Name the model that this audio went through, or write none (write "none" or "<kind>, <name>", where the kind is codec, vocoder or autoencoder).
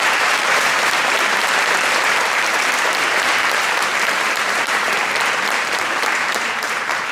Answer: vocoder, BigVGAN v2